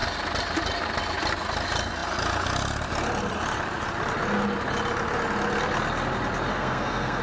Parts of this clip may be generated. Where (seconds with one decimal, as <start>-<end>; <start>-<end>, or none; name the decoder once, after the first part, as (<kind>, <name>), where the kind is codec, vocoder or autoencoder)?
6.5-7.2 (codec, SNAC)